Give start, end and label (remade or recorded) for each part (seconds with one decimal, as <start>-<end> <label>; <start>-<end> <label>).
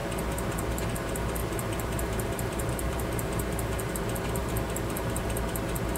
0.0-1.4 recorded; 1.4-3.9 remade; 3.9-4.4 recorded; 4.4-5.4 remade; 5.4-6.0 recorded